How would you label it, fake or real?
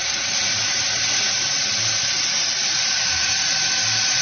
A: fake